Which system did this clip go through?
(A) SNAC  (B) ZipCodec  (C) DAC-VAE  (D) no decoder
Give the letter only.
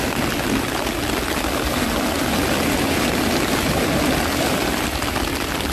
D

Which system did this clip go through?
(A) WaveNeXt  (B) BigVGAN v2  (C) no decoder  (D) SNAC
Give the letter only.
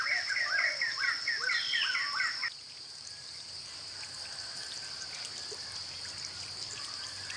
C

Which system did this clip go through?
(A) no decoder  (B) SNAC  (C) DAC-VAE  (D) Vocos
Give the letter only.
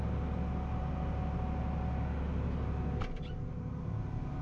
A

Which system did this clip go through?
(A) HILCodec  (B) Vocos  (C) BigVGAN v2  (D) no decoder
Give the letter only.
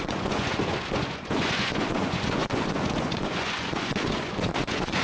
B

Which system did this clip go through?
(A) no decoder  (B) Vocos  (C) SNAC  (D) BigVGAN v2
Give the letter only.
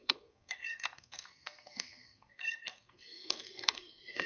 C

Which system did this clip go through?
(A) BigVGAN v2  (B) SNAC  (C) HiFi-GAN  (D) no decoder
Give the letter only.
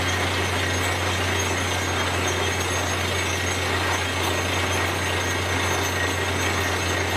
D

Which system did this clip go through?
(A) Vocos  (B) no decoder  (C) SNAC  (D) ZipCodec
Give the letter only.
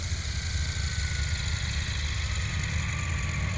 B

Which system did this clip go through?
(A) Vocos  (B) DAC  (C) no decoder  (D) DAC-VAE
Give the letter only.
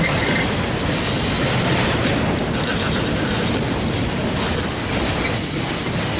C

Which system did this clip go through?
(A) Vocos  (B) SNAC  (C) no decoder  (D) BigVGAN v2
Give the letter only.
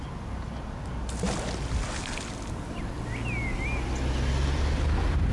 C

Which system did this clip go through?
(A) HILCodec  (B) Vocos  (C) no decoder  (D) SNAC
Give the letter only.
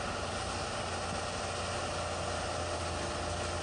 C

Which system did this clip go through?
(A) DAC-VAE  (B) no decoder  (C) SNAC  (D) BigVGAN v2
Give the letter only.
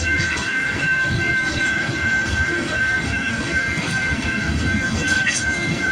C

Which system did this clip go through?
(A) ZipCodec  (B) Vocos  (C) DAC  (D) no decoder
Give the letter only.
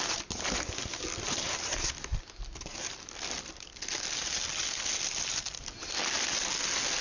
D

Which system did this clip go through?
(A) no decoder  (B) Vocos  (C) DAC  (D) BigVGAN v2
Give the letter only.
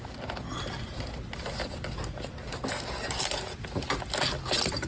A